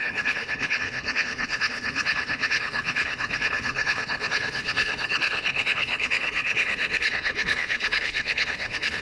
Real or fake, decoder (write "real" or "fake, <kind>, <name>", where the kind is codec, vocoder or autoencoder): fake, codec, HILCodec